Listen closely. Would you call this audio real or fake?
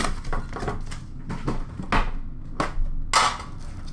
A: real